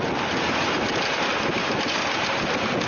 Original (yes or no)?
yes